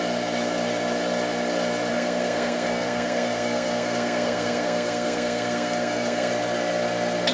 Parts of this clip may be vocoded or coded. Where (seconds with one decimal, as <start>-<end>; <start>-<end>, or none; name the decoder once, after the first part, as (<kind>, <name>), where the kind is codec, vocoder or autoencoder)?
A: 1.9-6.3 (codec, SNAC)